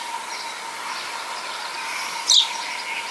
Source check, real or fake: real